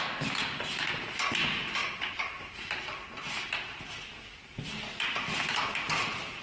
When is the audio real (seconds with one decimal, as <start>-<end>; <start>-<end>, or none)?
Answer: 0.0-6.4